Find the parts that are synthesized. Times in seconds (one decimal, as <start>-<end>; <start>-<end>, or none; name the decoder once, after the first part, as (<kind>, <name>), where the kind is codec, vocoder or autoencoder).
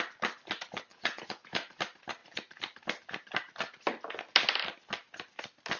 0.9-1.8 (vocoder, Vocos)